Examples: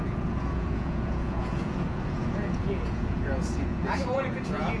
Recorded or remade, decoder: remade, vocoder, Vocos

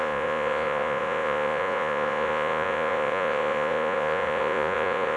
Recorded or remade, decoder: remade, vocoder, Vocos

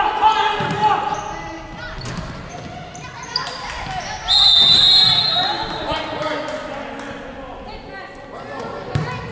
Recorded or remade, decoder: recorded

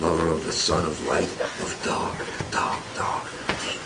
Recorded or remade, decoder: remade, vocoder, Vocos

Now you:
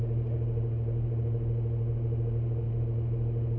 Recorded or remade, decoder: recorded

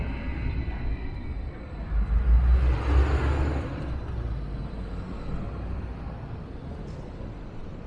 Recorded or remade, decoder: recorded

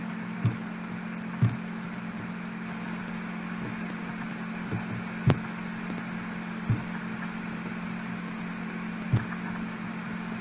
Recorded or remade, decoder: recorded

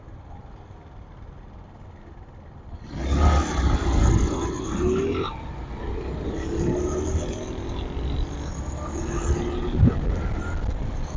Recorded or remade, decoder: recorded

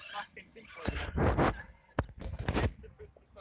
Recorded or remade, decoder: recorded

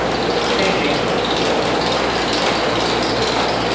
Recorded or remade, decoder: recorded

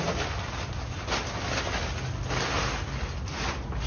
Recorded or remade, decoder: recorded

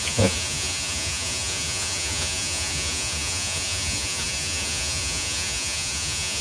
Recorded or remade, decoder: remade, vocoder, Vocos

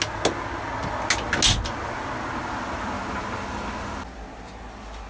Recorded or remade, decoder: recorded